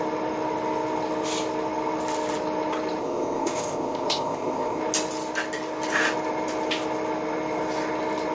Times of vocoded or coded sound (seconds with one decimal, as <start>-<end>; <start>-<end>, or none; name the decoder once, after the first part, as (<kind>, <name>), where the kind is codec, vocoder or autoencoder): 3.0-4.8 (codec, ZipCodec)